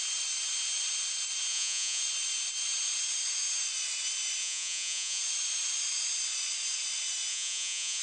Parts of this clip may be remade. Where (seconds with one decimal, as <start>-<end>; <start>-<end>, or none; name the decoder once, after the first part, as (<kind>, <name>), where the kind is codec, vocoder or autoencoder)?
1.5-2.0 (vocoder, Vocos); 4.4-5.2; 7.3-8.0